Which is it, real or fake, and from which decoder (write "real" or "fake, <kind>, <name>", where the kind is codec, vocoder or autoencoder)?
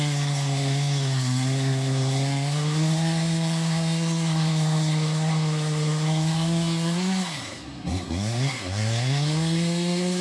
fake, codec, SNAC